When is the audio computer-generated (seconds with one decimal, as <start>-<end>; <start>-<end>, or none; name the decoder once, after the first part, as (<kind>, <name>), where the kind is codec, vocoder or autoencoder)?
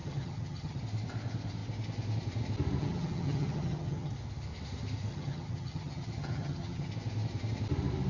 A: 0.0-0.8 (vocoder, HiFi-GAN); 2.8-4.1; 5.1-6.9